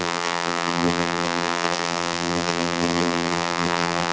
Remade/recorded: remade